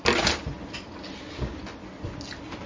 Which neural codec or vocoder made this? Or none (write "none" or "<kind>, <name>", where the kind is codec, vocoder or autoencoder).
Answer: none